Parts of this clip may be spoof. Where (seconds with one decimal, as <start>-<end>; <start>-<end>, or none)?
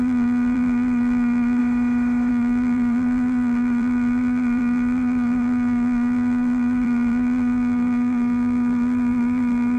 0.0-1.6; 2.3-9.8